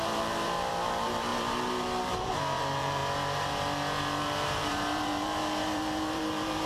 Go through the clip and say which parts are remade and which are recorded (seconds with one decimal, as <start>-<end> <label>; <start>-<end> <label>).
0.0-3.0 remade; 3.0-4.2 recorded; 4.2-6.7 remade